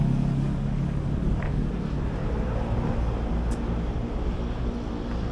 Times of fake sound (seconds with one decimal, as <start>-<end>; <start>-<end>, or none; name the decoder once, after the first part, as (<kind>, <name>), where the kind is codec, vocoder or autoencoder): 0.0-1.7 (codec, DAC)